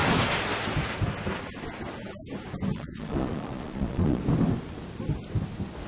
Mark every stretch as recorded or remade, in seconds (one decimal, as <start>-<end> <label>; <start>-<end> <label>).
0.0-2.7 recorded; 2.7-4.2 remade; 4.2-5.9 recorded